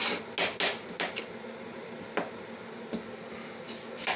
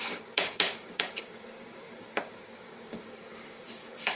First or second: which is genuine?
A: first